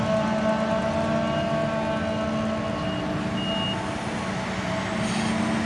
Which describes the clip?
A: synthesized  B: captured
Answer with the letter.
B